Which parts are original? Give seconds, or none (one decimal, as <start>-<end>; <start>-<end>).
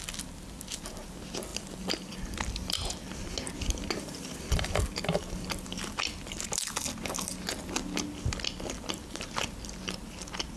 0.0-10.6